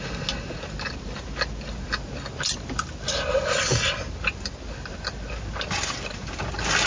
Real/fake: real